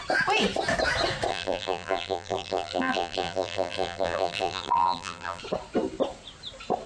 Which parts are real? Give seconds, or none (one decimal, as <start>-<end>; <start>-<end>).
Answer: 0.0-1.3; 5.4-6.9